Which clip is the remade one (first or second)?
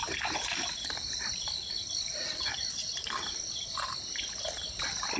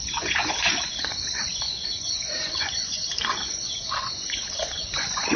second